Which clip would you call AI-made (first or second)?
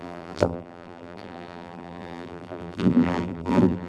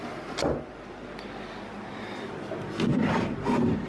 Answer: first